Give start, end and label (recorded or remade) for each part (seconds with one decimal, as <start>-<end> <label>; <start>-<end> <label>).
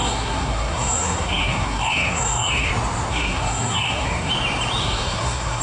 0.0-2.7 remade; 2.7-3.1 recorded; 3.1-4.3 remade; 4.3-4.8 recorded; 4.8-5.6 remade